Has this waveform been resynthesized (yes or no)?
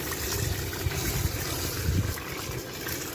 no